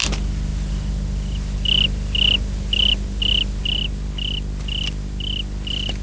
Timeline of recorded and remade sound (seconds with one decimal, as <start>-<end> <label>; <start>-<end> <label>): 0.0-6.0 recorded